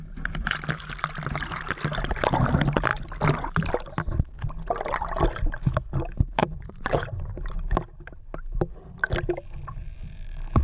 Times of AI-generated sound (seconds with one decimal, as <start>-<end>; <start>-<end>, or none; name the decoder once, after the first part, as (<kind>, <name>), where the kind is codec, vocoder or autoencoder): 6.4-7.3 (vocoder, Vocos)